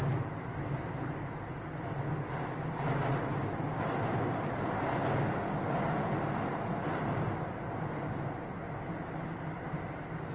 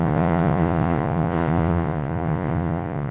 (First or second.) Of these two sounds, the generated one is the second